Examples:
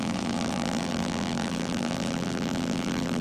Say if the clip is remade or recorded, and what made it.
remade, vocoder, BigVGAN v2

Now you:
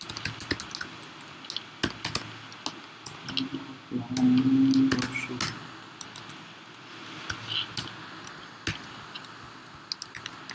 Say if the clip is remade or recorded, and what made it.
recorded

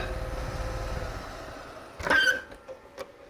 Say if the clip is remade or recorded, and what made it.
recorded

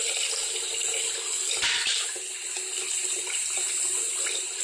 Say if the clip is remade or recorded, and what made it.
recorded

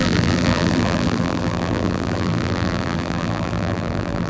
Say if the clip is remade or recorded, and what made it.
remade, vocoder, BigVGAN v2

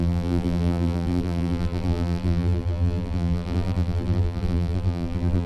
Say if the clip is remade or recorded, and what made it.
remade, vocoder, BigVGAN v2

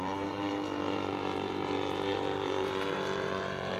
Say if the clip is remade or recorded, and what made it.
remade, vocoder, BigVGAN v2